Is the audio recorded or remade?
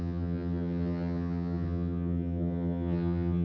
remade